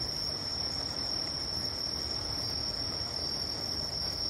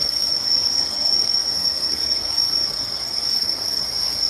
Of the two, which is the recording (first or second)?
first